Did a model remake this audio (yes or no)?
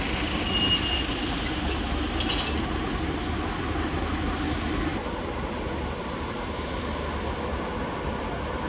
no